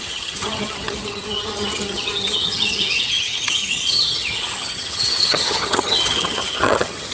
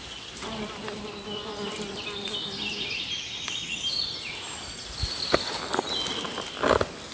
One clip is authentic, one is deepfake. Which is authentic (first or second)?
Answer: second